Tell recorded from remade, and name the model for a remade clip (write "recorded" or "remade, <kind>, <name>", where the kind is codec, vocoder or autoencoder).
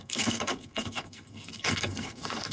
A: remade, codec, SNAC